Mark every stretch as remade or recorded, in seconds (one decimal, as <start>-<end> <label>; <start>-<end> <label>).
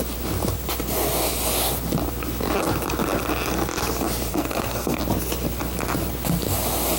0.0-4.3 recorded; 4.3-5.0 remade; 5.0-7.0 recorded